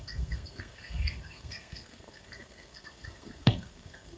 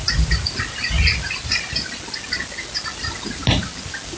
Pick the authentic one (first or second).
second